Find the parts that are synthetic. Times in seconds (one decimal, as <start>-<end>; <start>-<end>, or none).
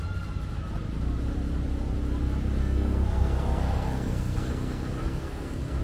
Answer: 2.6-5.8